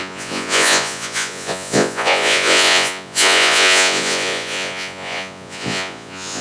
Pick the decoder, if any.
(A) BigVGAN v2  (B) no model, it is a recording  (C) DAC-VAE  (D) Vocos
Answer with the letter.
D